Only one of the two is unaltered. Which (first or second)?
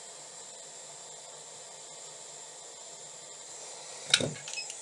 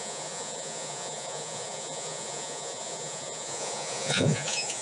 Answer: first